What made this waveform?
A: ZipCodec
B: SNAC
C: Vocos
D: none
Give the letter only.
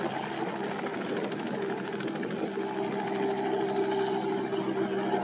D